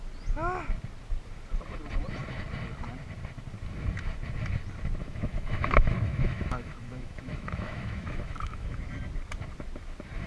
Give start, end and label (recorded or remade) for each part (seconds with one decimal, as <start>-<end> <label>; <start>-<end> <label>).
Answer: 0.0-5.0 recorded; 5.0-8.8 remade; 8.8-10.3 recorded